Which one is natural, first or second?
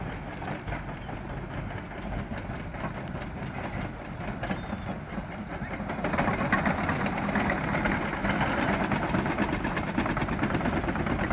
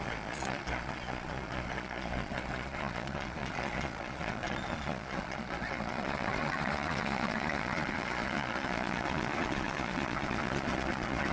first